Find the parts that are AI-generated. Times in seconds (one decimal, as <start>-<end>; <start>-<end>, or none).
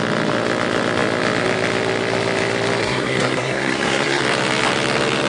2.8-4.2